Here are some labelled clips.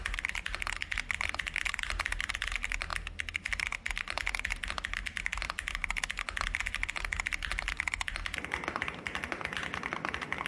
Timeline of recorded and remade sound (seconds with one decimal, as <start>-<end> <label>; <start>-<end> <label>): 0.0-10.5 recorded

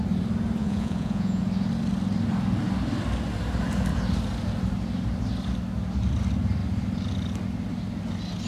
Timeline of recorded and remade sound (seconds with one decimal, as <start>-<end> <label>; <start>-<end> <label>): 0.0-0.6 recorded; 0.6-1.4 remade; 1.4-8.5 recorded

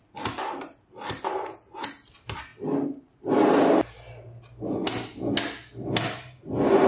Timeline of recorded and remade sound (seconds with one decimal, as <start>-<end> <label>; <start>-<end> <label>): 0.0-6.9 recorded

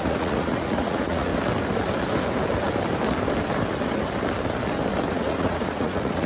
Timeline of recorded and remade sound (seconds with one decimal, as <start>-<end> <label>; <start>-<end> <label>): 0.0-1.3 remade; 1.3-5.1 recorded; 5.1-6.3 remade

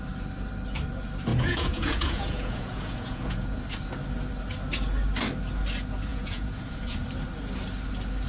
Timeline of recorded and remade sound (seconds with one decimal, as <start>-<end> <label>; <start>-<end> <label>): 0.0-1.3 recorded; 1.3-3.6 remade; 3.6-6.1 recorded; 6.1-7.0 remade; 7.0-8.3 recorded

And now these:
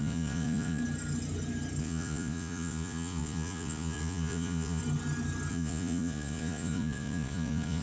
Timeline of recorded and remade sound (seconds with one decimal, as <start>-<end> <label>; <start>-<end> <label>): 0.0-0.8 remade; 0.8-1.8 recorded; 1.8-4.8 remade; 4.8-5.5 recorded; 5.5-7.8 remade

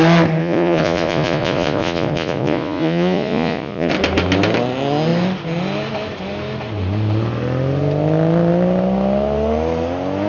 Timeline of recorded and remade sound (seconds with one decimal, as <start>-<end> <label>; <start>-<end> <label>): 0.0-0.4 recorded; 0.4-3.9 remade; 3.9-10.3 recorded

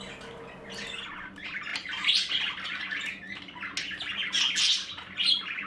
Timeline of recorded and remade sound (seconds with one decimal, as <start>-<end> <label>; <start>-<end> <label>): 0.0-5.7 recorded